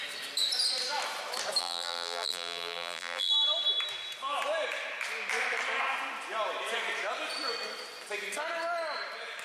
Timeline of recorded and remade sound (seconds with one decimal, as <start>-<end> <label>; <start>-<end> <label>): 0.0-1.6 recorded; 1.6-3.3 remade; 3.3-9.4 recorded